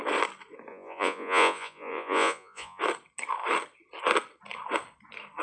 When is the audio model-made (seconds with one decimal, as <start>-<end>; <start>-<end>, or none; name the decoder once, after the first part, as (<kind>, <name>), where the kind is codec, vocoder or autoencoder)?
0.7-2.8 (vocoder, Vocos)